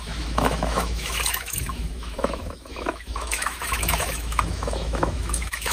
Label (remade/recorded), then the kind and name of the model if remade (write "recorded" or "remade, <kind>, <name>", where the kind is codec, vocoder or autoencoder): remade, autoencoder, DAC-VAE